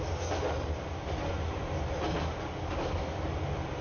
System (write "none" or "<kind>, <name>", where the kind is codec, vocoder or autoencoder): none